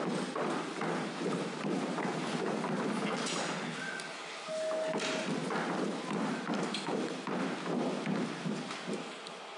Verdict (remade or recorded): recorded